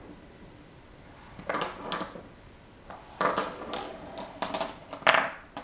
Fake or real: real